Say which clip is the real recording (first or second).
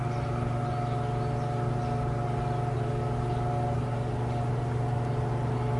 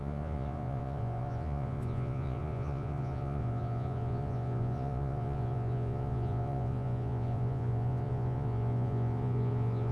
first